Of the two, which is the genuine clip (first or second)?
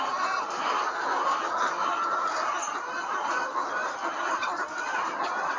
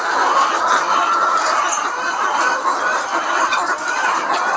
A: first